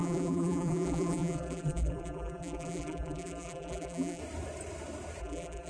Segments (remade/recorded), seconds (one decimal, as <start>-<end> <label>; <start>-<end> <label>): 0.0-4.2 remade; 4.2-5.2 recorded; 5.2-5.7 remade